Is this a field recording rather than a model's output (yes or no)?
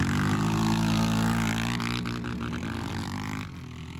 yes